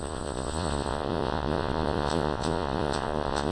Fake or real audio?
fake